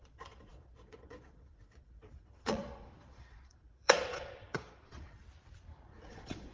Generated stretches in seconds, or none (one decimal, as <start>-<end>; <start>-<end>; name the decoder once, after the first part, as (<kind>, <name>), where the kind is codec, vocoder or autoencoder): 0.0-5.2 (vocoder, Vocos); 6.1-6.5